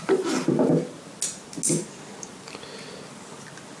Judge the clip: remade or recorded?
recorded